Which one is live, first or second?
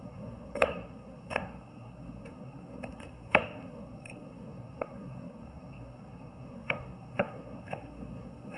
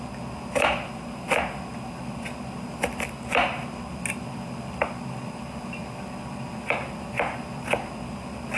second